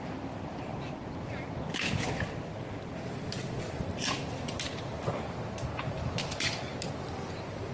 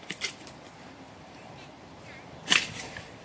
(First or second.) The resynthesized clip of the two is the second